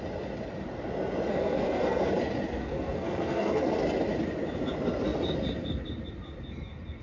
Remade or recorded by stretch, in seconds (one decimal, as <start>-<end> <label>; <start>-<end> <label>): 0.0-1.3 recorded; 1.3-2.1 remade; 2.1-2.6 recorded; 2.6-3.7 remade; 3.7-7.0 recorded